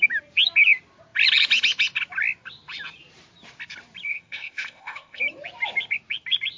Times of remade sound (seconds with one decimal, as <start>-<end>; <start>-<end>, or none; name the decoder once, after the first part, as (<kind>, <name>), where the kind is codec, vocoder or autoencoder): 4.1-5.2 (codec, ZipCodec)